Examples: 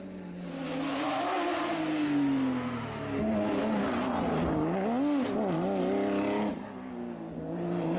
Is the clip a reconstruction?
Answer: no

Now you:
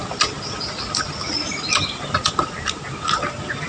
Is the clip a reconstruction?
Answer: no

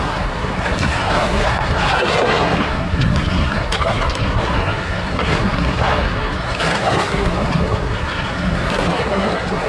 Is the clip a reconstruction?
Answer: yes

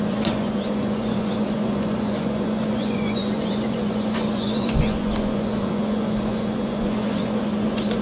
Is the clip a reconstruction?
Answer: yes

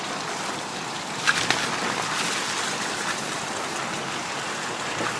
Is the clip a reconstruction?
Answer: no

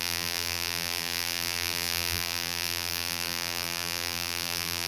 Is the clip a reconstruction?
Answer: yes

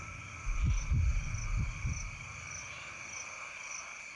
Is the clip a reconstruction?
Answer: no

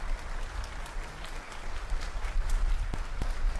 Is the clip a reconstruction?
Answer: no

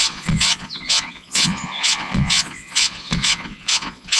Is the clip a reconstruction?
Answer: yes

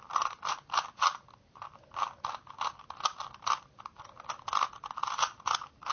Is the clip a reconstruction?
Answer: no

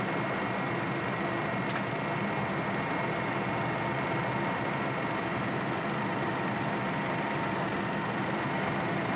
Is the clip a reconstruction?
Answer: yes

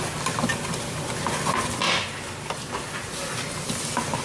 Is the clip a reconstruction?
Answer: no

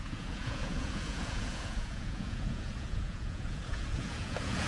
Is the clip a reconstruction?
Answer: yes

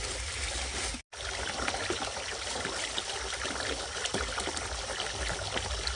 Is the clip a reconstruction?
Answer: no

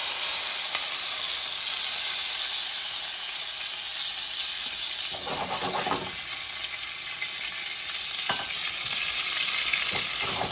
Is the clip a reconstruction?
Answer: no